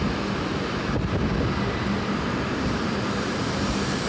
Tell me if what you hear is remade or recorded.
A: recorded